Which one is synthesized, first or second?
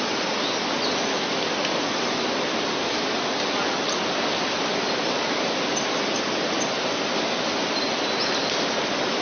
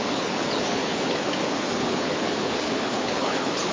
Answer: second